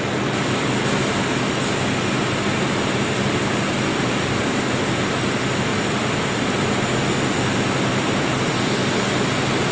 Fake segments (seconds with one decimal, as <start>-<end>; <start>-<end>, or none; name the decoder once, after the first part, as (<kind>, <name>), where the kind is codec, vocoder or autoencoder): 3.9-4.5 (vocoder, BigVGAN v2); 5.7-6.5; 7.9-8.5

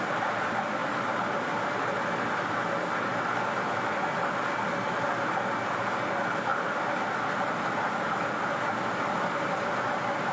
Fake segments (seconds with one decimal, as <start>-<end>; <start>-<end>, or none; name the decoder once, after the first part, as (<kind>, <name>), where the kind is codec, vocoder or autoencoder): none

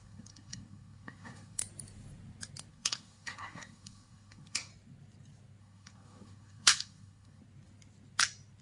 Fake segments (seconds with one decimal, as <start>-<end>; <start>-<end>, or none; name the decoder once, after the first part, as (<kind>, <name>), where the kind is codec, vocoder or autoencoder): 0.0-1.6 (codec, SNAC); 2.7-4.7; 5.6-7.4

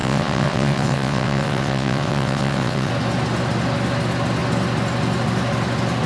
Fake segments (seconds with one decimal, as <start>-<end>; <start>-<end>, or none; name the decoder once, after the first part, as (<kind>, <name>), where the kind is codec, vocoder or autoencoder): 0.0-2.9 (vocoder, WaveNeXt)

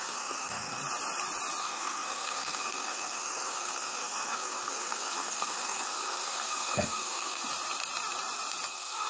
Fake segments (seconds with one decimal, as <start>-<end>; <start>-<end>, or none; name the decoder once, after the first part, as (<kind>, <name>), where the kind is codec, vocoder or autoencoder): 0.0-0.8 (codec, SNAC); 1.6-7.4; 8.7-9.1

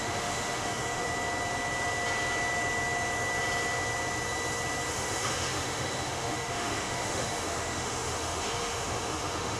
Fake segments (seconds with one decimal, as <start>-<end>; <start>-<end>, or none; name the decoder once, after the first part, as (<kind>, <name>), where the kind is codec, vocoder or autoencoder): 0.0-1.1 (autoencoder, DAC-VAE); 4.9-9.6

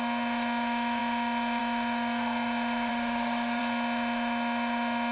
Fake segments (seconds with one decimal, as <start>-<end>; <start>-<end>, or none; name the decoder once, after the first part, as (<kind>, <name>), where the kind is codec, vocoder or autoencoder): 2.9-3.6 (autoencoder, DAC-VAE)

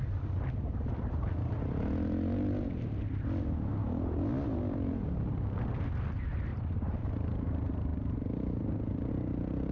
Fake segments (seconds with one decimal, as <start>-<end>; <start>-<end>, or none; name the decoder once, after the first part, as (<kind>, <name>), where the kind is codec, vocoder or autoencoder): 6.5-7.1 (vocoder, BigVGAN v2); 7.9-9.1